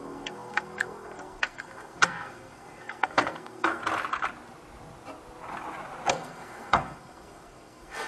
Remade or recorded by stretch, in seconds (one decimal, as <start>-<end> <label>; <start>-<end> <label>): 0.0-3.8 remade; 3.8-6.1 recorded; 6.1-8.1 remade